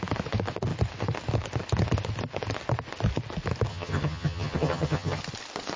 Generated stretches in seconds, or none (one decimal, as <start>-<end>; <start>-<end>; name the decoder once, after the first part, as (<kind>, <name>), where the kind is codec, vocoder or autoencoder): 3.7-5.2 (vocoder, HiFi-GAN)